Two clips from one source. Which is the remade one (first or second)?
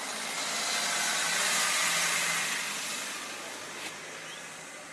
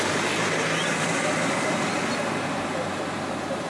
second